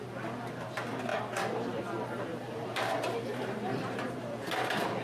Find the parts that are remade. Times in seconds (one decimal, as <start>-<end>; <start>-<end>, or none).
1.1-1.8; 2.3-4.5